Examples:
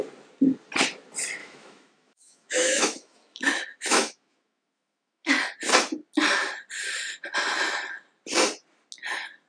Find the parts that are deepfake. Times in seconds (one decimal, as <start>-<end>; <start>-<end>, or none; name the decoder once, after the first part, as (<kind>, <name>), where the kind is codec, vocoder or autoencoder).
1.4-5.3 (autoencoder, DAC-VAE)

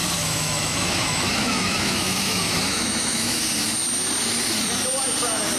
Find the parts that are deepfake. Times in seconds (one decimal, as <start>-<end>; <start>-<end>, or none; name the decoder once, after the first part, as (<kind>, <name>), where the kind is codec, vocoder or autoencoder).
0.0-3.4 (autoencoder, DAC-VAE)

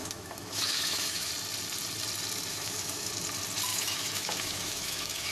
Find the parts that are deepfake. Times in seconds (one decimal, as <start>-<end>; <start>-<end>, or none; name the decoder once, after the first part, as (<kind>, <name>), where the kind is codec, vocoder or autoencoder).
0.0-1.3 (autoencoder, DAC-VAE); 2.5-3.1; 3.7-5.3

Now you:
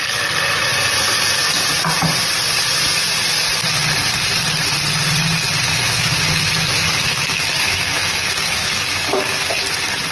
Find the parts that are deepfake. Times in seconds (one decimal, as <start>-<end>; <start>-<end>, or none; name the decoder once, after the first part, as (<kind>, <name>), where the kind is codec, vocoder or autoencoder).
5.7-9.5 (autoencoder, DAC-VAE)

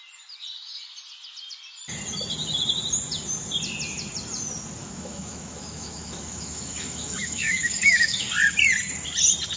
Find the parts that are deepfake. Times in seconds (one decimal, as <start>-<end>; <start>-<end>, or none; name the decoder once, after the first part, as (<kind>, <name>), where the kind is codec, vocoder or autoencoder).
4.8-8.3 (autoencoder, DAC-VAE)

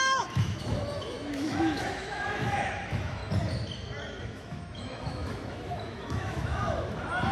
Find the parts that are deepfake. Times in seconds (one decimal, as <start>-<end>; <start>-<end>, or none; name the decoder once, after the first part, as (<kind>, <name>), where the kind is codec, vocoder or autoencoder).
0.0-3.2 (autoencoder, DAC-VAE); 4.2-7.3

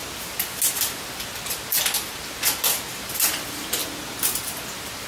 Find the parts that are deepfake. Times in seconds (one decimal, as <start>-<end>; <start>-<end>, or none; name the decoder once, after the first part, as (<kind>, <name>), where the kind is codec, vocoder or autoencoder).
none